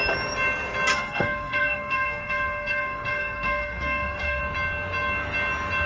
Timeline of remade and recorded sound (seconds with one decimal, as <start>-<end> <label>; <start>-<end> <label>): 0.0-0.9 recorded; 0.9-4.4 remade; 4.4-5.9 recorded